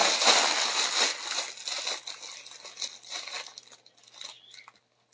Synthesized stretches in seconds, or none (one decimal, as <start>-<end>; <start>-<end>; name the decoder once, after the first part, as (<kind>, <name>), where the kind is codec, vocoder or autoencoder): none